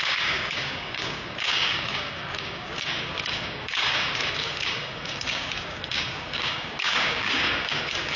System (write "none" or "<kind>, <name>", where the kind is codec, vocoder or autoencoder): codec, DAC